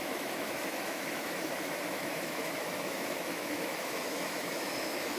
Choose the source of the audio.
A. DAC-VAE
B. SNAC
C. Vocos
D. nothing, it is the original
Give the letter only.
A